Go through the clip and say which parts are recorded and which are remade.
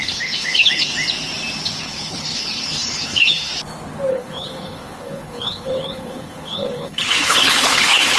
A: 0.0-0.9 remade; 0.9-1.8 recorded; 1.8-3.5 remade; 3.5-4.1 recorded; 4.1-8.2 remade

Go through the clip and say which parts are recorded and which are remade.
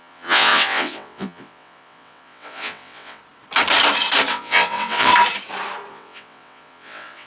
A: 0.0-3.2 remade; 3.2-4.3 recorded; 4.3-5.1 remade; 5.1-5.9 recorded; 5.9-7.3 remade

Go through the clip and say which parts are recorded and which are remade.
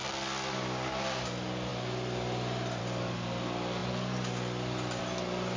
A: 0.0-5.6 recorded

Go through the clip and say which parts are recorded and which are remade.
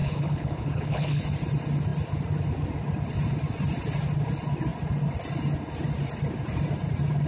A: 0.0-1.2 remade; 1.2-7.3 recorded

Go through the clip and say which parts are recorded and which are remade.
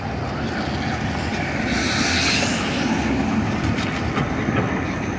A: 0.0-5.2 recorded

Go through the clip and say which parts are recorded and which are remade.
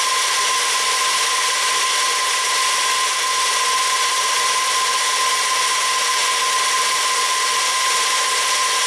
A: 0.0-8.9 recorded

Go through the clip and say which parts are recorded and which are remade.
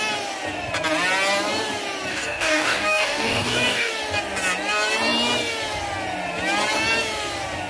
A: 0.0-2.1 recorded; 2.1-3.9 remade; 3.9-7.7 recorded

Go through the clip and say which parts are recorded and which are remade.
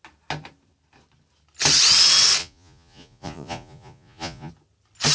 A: 0.0-2.4 recorded; 2.4-4.5 remade; 4.5-5.1 recorded